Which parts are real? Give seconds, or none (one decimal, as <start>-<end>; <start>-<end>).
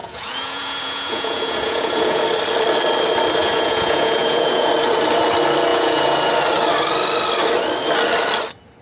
2.2-3.4; 4.7-5.7; 6.3-8.8